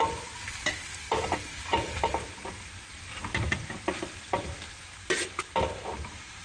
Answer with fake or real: real